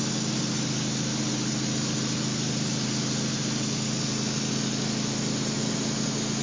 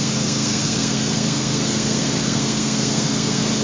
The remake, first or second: second